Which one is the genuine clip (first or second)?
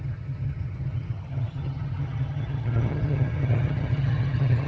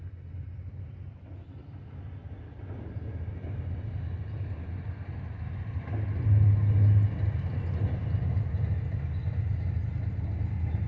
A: second